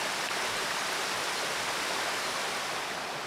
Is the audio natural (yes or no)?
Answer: yes